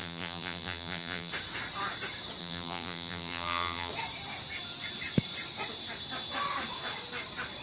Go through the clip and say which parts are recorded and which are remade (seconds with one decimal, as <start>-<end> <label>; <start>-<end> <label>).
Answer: 0.0-1.3 remade; 1.3-2.4 recorded; 2.4-3.9 remade; 3.9-7.6 recorded